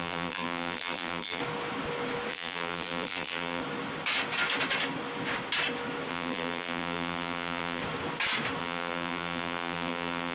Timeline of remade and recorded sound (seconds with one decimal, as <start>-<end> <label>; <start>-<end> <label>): 0.0-1.4 remade; 1.4-2.3 recorded; 2.3-3.6 remade; 3.6-6.1 recorded; 6.1-7.8 remade; 7.8-8.6 recorded; 8.6-10.3 remade